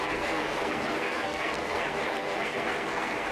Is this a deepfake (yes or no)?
yes